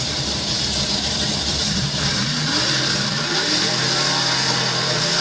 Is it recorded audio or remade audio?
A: remade